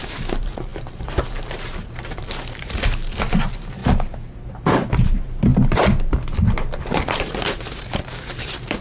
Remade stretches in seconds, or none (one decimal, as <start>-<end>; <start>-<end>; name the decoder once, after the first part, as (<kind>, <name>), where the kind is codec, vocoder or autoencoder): 0.0-3.8 (vocoder, BigVGAN v2); 4.5-5.5; 7.2-8.8